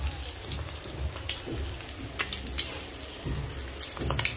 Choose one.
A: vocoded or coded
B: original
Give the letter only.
B